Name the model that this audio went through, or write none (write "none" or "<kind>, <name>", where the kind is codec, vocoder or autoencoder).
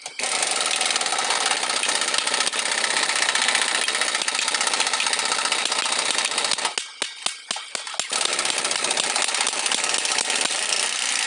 none